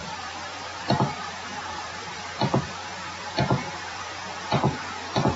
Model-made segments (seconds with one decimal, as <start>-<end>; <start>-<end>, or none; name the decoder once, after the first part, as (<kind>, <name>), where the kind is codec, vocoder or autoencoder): 0.0-0.8 (vocoder, BigVGAN v2); 1.7-4.6